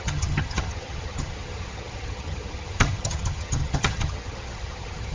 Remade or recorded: remade